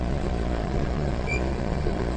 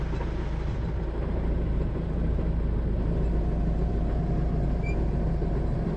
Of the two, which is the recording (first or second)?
second